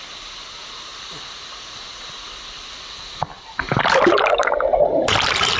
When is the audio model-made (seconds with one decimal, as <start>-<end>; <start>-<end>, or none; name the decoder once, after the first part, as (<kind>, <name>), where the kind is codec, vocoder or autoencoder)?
0.9-4.3 (vocoder, BigVGAN v2); 4.7-5.6